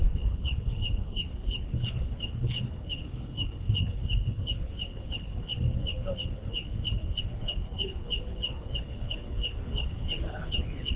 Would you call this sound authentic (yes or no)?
no